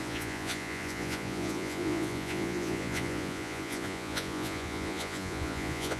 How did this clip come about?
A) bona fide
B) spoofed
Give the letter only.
B